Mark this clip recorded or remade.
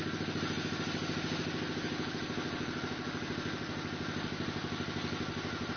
recorded